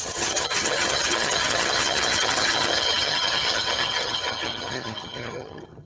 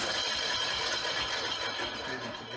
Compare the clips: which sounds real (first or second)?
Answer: second